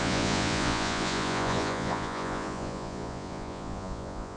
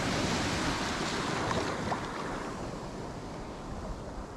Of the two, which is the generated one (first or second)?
first